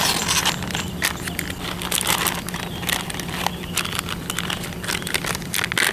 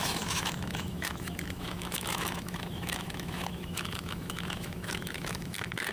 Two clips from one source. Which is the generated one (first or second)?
second